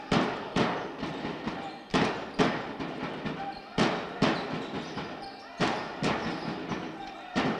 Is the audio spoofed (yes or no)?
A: no